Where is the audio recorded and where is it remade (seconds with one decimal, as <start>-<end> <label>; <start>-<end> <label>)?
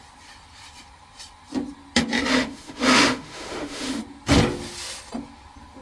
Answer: 0.0-2.3 recorded; 2.3-4.0 remade; 4.0-5.8 recorded